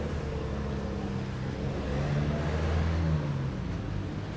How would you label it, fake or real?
real